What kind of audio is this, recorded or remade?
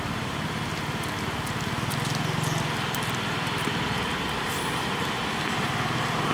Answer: recorded